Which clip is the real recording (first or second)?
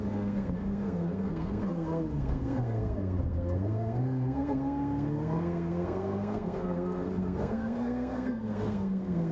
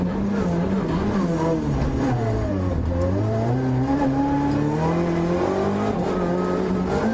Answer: second